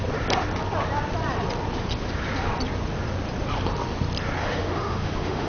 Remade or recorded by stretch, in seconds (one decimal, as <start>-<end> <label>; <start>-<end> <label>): 0.0-4.4 recorded; 4.4-5.5 remade